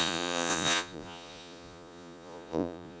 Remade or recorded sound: remade